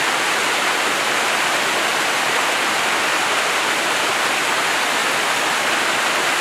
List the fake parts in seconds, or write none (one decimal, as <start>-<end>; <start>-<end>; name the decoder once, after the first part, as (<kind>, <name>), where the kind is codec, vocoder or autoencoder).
1.9-4.1 (vocoder, BigVGAN v2); 5.0-6.4